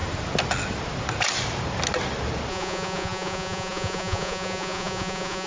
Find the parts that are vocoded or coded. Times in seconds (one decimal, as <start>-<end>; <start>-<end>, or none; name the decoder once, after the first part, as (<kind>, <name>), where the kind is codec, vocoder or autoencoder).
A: 2.5-5.5 (vocoder, Vocos)